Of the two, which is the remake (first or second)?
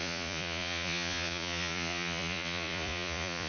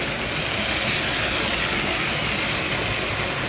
first